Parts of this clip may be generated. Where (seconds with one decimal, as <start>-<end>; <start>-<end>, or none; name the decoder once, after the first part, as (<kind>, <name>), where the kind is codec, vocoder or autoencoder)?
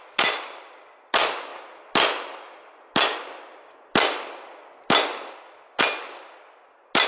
none